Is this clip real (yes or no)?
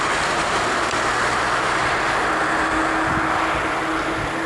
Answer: yes